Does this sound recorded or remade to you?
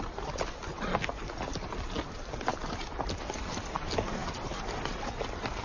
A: recorded